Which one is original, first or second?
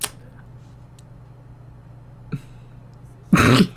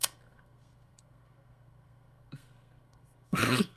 first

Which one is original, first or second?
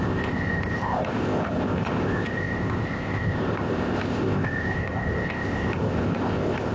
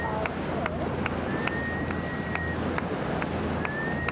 second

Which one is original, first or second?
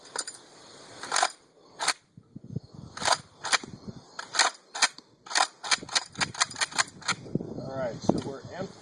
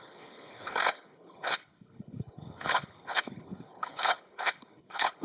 first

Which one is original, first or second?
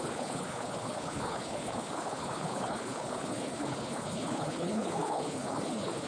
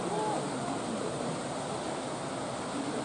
second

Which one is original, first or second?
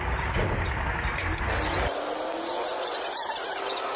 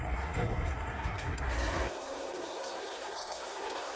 first